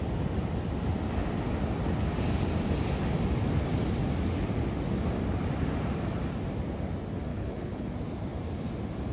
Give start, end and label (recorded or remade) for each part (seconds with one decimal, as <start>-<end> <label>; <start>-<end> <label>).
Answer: 0.0-7.3 recorded; 7.3-7.9 remade; 7.9-9.1 recorded